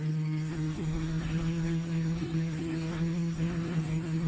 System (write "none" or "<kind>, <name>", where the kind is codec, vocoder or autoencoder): codec, SNAC